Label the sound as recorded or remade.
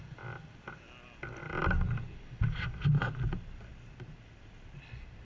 recorded